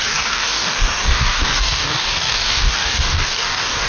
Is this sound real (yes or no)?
no